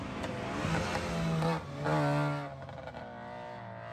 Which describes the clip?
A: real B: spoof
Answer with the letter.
A